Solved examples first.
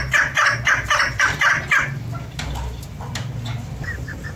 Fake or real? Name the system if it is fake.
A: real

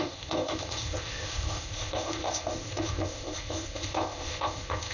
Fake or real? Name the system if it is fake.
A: fake, codec, ZipCodec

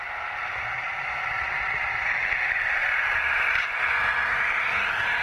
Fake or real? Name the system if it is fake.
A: real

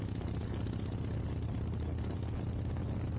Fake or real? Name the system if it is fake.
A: real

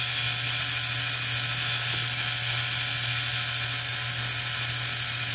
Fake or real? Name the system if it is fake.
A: real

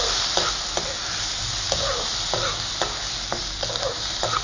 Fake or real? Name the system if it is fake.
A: real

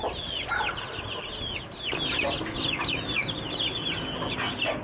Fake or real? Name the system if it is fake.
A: real